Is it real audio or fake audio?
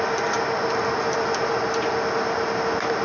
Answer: real